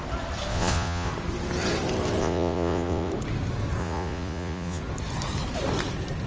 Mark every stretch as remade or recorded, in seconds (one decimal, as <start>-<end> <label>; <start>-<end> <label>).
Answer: 0.0-0.5 recorded; 0.5-1.1 remade; 1.1-2.2 recorded; 2.2-3.1 remade; 3.1-3.8 recorded; 3.8-4.8 remade; 4.8-6.3 recorded